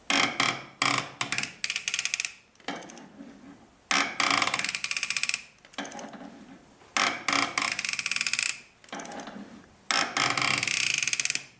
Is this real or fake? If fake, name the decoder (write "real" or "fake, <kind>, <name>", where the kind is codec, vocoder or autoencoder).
real